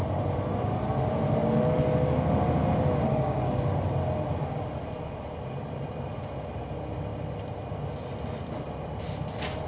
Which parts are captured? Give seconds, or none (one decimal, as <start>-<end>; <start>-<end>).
0.0-3.0; 3.6-9.7